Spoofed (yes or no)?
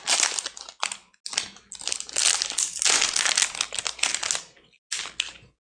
no